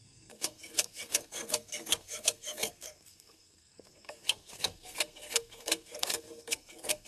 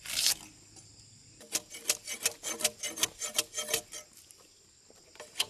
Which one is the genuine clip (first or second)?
second